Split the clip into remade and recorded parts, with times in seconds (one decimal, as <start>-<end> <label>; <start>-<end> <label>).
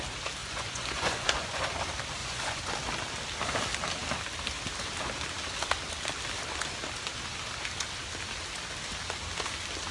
0.0-0.4 recorded; 0.4-1.6 remade; 1.6-2.2 recorded; 2.2-2.7 remade; 2.7-9.9 recorded